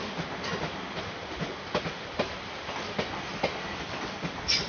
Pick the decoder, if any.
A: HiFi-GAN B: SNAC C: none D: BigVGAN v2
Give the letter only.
C